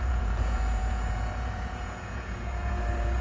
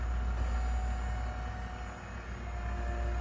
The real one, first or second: second